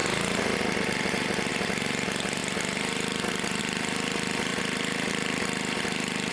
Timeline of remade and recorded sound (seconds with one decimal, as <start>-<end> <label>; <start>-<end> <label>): 0.0-2.4 recorded; 2.4-3.6 remade; 3.6-4.5 recorded; 4.5-6.3 remade

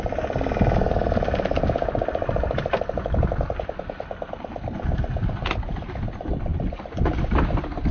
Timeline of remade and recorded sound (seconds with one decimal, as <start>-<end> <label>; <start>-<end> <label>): 0.0-7.9 recorded

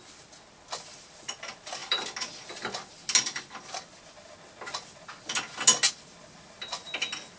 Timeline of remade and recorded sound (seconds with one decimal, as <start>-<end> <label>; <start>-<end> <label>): 0.0-7.4 recorded

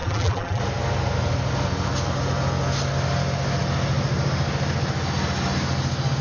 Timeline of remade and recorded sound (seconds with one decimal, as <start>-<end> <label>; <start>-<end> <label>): 0.0-0.6 remade; 0.6-6.2 recorded

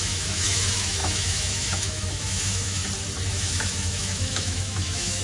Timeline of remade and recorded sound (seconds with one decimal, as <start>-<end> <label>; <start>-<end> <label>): 0.0-2.8 remade; 2.8-3.3 recorded; 3.3-5.2 remade